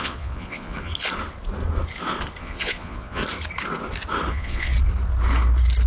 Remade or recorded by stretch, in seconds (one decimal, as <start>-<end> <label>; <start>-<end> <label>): 0.0-0.9 remade; 0.9-2.4 recorded; 2.4-3.2 remade; 3.2-4.3 recorded; 4.3-4.7 remade; 4.7-5.9 recorded